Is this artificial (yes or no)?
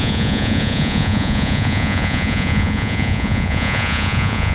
yes